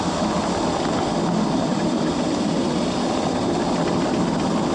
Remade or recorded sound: recorded